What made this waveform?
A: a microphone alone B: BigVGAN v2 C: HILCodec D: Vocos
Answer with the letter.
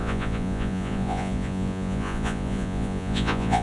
D